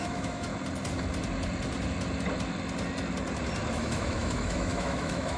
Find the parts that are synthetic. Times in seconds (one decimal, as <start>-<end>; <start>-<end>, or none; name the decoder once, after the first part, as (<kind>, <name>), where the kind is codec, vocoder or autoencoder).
0.0-0.5 (autoencoder, DAC-VAE); 3.7-5.4